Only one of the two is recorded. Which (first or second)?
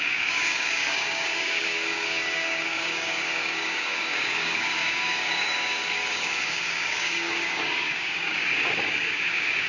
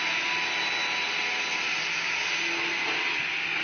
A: second